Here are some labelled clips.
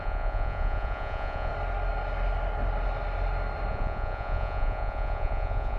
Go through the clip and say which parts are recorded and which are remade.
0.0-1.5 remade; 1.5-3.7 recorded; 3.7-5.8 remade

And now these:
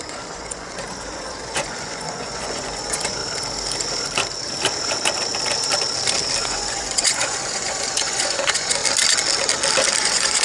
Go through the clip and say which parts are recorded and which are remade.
0.0-3.2 remade; 3.2-6.4 recorded; 6.4-8.8 remade; 8.8-10.0 recorded; 10.0-10.4 remade

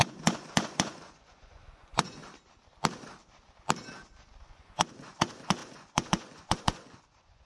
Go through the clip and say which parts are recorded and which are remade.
0.0-2.2 remade; 2.2-4.4 recorded; 4.4-7.5 remade

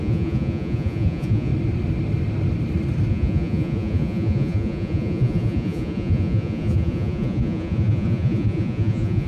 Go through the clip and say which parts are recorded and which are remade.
0.0-1.5 remade; 1.5-3.1 recorded; 3.1-9.3 remade

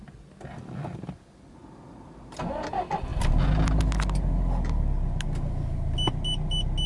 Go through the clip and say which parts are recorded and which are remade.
0.0-6.9 recorded

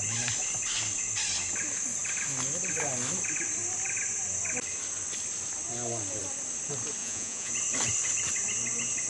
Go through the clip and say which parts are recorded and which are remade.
0.0-7.0 recorded; 7.0-7.5 remade; 7.5-9.1 recorded